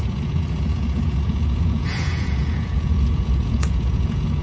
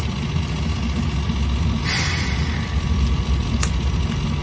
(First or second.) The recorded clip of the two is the second